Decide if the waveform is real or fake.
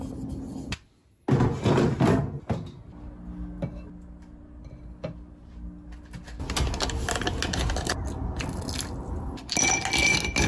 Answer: real